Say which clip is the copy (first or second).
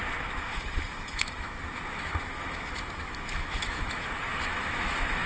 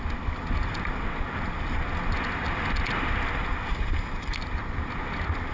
first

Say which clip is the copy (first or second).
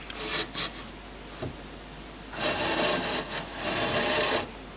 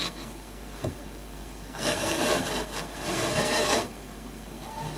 second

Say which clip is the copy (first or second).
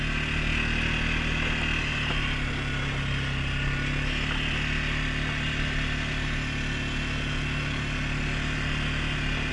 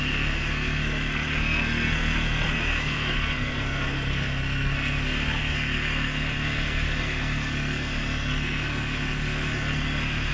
second